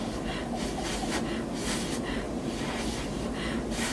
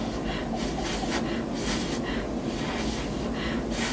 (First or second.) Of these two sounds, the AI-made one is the first